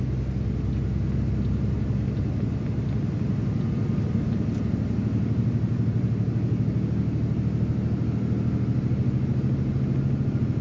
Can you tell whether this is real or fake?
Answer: real